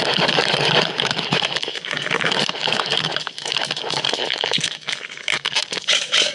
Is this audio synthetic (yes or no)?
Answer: yes